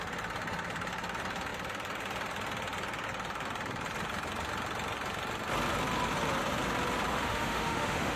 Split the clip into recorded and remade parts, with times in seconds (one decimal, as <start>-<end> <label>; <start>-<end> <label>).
0.0-7.1 recorded; 7.1-8.2 remade